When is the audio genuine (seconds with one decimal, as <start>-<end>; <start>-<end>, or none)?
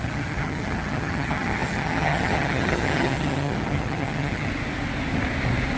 4.5-5.8